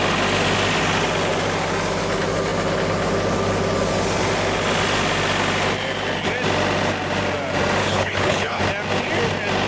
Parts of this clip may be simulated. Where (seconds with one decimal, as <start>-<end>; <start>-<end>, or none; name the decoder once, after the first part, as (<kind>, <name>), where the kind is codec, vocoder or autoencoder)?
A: 7.8-8.6 (codec, HILCodec)